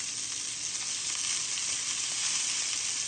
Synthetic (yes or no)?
no